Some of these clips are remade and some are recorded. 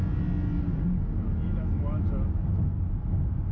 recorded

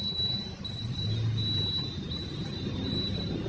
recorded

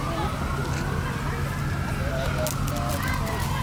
recorded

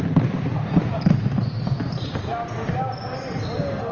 recorded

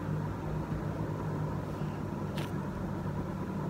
recorded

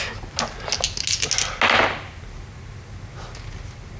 recorded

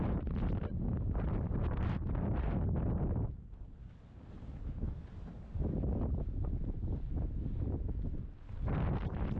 recorded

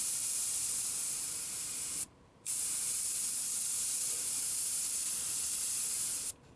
remade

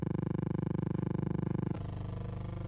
recorded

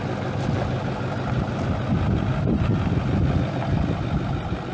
recorded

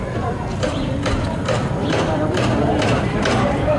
remade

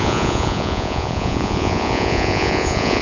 remade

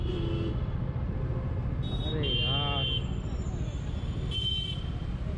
recorded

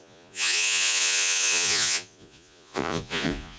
remade